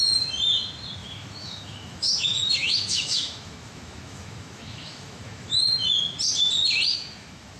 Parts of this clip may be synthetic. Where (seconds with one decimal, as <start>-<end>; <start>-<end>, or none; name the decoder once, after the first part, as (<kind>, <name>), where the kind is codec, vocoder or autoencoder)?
1.0-5.6 (autoencoder, DAC-VAE); 6.9-7.6